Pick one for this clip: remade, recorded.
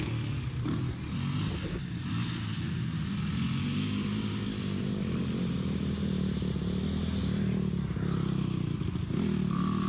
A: recorded